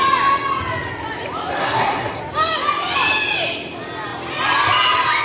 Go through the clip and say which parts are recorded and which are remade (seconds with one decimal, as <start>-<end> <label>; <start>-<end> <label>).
0.0-1.6 recorded; 1.6-2.2 remade; 2.2-5.2 recorded

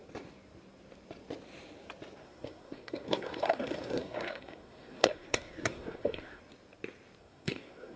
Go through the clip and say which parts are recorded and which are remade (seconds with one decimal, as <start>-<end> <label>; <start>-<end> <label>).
0.0-2.2 recorded; 2.2-6.4 remade; 6.4-7.2 recorded; 7.2-8.0 remade